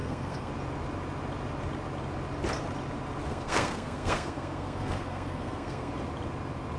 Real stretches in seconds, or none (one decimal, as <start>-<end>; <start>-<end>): 0.5-3.3; 5.9-6.8